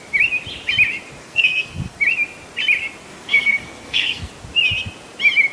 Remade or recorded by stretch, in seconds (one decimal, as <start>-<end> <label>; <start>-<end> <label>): 0.0-1.2 recorded; 1.2-2.0 remade; 2.0-3.1 recorded; 3.1-4.3 remade; 4.3-5.5 recorded